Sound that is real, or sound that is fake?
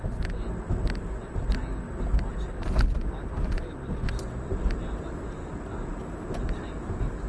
real